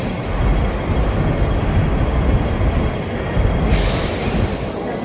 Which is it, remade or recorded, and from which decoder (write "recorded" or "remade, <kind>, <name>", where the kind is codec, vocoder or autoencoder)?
recorded